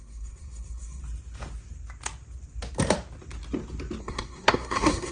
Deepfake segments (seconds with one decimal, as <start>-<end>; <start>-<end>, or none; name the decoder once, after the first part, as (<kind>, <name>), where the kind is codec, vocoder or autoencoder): 0.0-1.0 (codec, SNAC); 4.0-5.1